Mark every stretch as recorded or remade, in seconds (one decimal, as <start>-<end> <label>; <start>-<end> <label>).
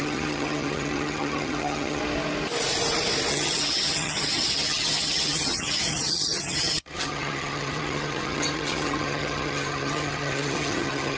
0.0-2.0 remade; 2.0-3.3 recorded; 3.3-11.2 remade